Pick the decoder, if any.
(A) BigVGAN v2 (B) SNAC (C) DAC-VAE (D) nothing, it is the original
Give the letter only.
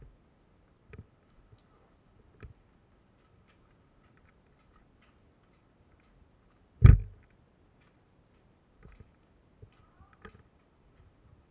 D